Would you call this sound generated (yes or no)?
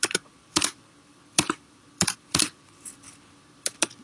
yes